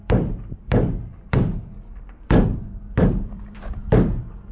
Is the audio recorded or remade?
remade